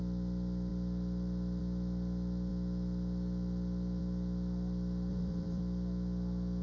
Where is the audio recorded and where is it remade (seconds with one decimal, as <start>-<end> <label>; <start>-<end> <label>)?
0.0-5.1 recorded; 5.1-5.6 remade; 5.6-6.6 recorded